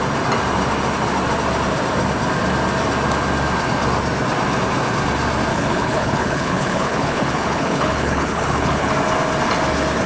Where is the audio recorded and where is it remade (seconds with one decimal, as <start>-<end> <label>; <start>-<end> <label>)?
0.0-5.5 recorded; 5.5-8.9 remade; 8.9-10.1 recorded